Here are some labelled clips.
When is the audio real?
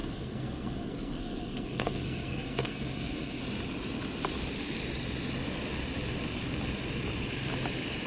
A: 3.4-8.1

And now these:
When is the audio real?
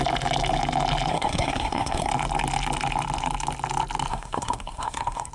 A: 0.0-1.1; 2.1-4.1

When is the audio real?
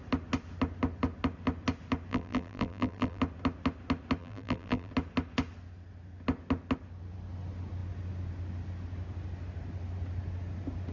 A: 0.0-2.1; 3.2-4.2; 4.9-10.9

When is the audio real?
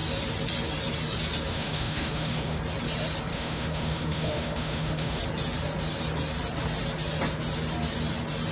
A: 0.0-1.5; 2.6-3.3; 5.2-8.5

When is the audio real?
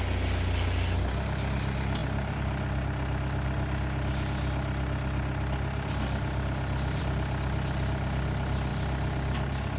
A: 0.0-9.8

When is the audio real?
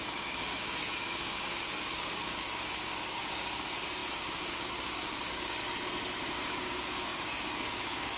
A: 5.6-6.3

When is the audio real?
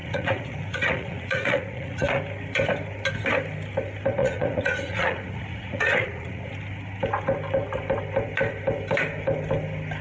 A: 2.2-4.2; 6.5-10.0